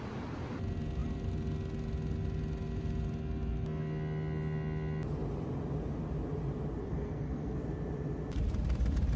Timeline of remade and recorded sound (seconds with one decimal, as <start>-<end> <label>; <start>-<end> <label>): 0.0-6.8 recorded; 6.8-7.6 remade; 7.6-9.2 recorded